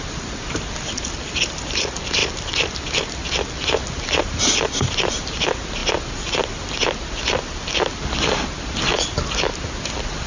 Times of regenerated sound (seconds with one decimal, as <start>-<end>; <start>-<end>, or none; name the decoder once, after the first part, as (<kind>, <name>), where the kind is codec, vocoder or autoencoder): none

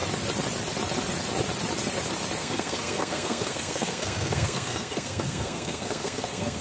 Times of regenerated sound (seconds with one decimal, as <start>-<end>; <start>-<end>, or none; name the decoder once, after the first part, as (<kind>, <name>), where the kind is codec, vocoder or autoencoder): 2.4-6.6 (codec, SNAC)